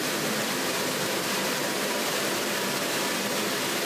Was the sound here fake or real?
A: fake